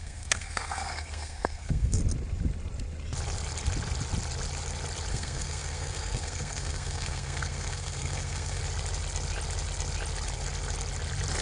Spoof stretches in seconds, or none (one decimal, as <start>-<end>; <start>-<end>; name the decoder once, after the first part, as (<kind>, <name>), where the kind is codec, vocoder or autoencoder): 0.0-2.0 (codec, SNAC); 5.1-8.6